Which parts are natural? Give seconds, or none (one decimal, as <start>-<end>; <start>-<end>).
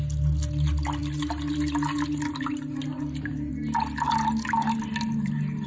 0.0-5.7